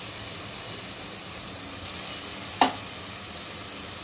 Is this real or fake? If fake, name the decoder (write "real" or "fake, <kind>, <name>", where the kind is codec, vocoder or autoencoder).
real